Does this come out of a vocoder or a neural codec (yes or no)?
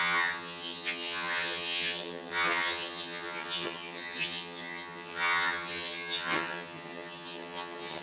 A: yes